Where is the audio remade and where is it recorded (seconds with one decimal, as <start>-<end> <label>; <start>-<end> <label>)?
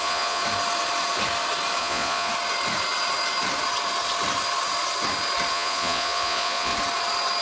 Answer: 0.0-0.4 remade; 0.4-1.8 recorded; 1.8-2.3 remade; 2.3-5.5 recorded; 5.5-6.7 remade; 6.7-7.4 recorded